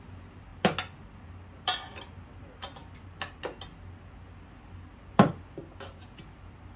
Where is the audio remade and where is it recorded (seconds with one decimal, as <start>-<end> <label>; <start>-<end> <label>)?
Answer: 0.0-6.8 recorded